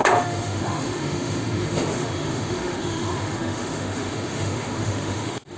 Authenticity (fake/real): fake